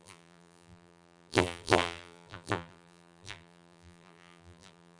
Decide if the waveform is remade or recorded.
remade